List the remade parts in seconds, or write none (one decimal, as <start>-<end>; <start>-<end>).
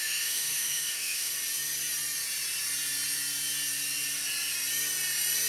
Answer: 0.0-1.3